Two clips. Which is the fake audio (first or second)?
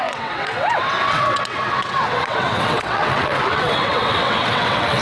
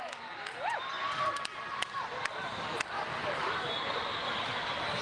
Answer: first